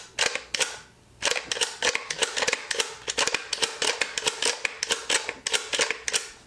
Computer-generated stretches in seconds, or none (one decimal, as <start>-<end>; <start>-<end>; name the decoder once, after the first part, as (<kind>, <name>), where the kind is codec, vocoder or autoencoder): none